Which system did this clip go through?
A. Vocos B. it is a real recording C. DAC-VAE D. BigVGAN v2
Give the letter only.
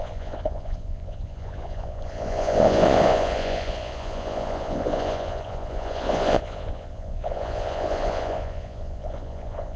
A